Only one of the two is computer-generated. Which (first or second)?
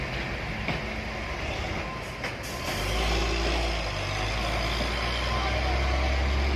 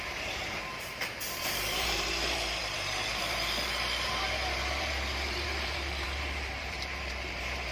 second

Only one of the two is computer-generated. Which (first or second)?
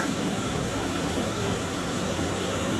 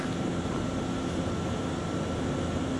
first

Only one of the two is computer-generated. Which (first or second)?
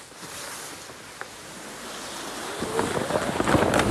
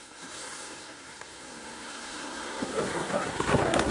second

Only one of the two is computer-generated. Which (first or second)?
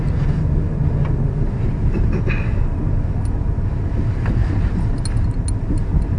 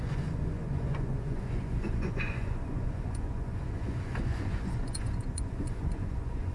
second